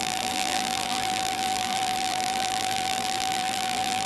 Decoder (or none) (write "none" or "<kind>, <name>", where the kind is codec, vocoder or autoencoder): vocoder, BigVGAN v2